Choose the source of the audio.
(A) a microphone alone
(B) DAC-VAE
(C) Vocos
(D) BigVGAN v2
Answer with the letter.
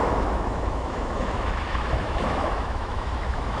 B